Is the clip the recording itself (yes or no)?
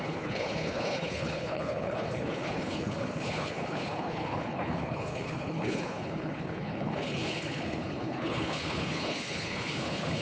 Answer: no